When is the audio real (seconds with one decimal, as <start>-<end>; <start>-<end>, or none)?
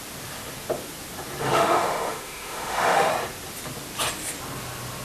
0.0-1.4; 3.1-5.0